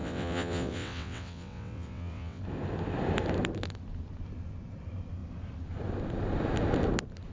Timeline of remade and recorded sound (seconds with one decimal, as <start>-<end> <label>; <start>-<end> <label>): 0.0-2.4 remade; 2.4-7.3 recorded